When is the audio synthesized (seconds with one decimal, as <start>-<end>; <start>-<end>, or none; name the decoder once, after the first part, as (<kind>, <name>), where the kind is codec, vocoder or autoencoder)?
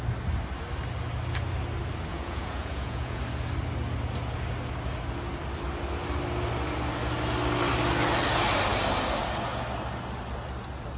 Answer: 2.1-3.2 (vocoder, Vocos)